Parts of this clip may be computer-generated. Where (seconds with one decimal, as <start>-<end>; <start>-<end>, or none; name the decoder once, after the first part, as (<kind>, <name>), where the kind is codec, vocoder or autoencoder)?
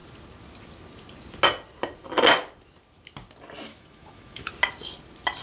3.7-4.5 (autoencoder, DAC-VAE)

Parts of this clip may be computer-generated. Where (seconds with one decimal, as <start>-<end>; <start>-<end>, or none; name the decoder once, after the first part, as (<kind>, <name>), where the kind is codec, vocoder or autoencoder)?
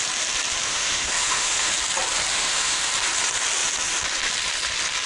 0.7-1.7 (autoencoder, DAC-VAE); 2.3-2.9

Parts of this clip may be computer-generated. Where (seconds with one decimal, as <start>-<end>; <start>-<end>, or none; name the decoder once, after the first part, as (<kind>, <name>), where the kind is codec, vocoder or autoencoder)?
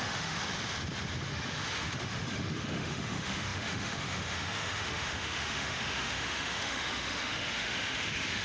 0.0-0.4 (autoencoder, DAC-VAE); 1.3-8.4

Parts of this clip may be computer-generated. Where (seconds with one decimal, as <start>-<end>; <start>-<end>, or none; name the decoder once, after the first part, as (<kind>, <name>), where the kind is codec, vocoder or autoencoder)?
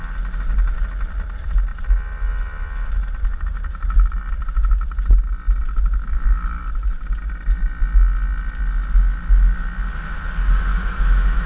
6.0-6.6 (autoencoder, DAC-VAE); 10.7-11.5